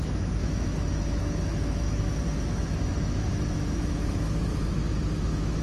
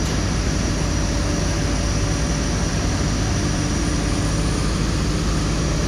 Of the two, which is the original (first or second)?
second